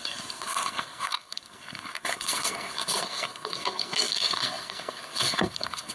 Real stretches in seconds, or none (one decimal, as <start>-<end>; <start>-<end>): none